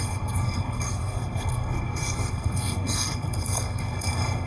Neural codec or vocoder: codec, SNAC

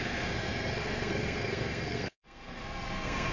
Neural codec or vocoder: codec, SNAC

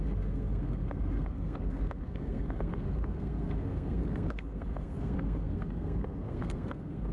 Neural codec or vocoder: codec, SNAC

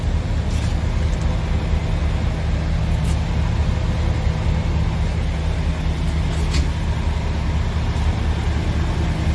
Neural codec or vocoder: none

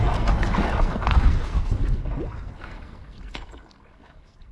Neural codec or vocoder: codec, SNAC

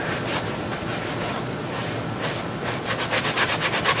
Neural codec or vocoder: none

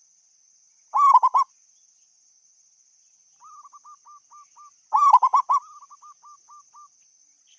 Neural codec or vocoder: none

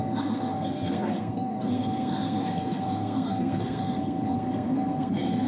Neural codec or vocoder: codec, SNAC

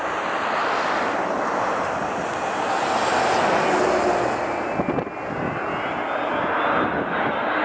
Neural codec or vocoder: none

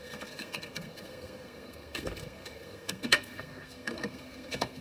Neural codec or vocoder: codec, SNAC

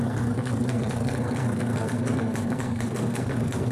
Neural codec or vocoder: codec, SNAC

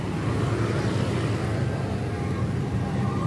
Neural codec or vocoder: none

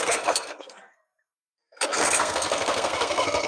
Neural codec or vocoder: codec, SNAC